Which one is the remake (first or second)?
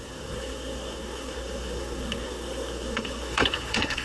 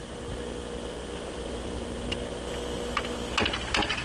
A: first